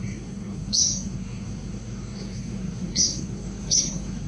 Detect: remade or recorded remade